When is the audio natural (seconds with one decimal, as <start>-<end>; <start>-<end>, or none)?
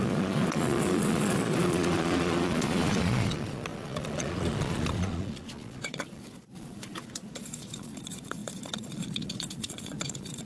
none